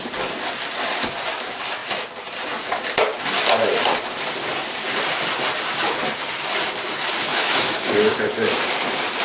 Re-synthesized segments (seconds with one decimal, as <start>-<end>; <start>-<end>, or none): 7.3-8.1